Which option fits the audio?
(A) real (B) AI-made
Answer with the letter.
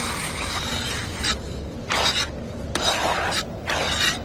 A